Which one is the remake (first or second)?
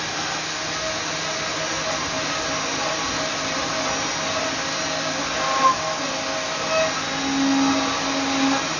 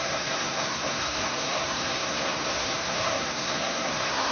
second